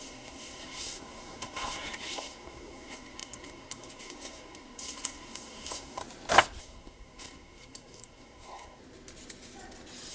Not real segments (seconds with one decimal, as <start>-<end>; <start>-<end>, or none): 0.0-6.0; 6.6-8.8